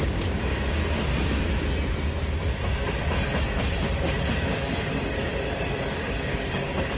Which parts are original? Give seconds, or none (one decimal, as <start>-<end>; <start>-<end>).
0.8-4.3; 5.3-5.9